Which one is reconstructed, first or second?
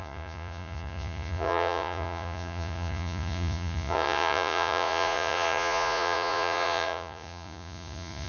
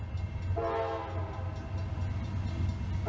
first